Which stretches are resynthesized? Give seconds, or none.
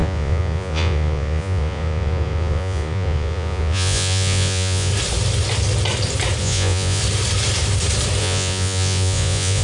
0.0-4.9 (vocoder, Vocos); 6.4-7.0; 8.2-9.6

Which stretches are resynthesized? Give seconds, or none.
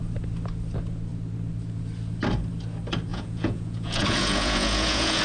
3.1-5.2 (vocoder, Vocos)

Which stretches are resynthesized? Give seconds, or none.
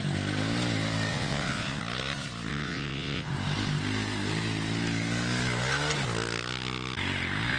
1.1-1.8 (vocoder, WaveNeXt); 2.5-3.3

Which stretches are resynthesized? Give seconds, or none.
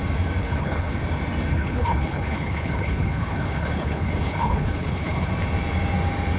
0.4-0.9 (codec, HILCodec); 1.5-5.3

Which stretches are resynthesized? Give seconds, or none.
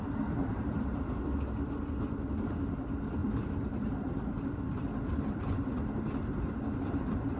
0.4-1.0 (vocoder, BigVGAN v2); 3.2-5.9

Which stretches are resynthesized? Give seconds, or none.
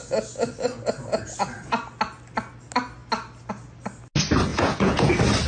4.5-5.1 (vocoder, Vocos)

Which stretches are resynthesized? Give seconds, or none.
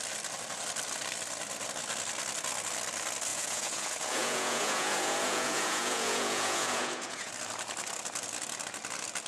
3.3-7.3 (vocoder, Vocos)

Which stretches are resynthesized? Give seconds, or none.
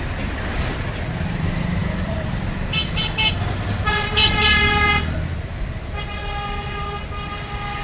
none